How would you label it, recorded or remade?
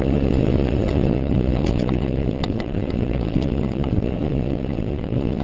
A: remade